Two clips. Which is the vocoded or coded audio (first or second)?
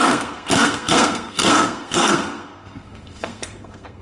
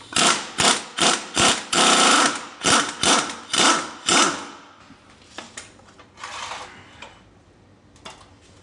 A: first